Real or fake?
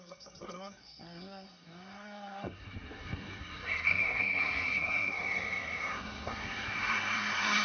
fake